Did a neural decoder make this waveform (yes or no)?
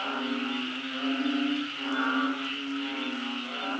no